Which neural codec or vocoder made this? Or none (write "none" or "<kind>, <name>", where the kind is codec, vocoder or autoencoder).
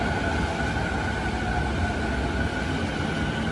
none